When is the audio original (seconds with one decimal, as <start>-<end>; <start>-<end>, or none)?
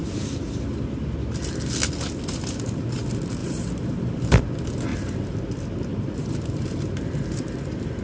0.6-3.4; 4.4-4.9; 5.4-5.9